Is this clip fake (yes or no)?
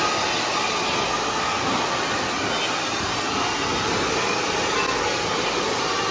no